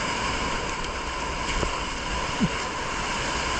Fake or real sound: real